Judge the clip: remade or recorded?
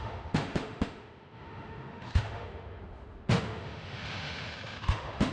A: remade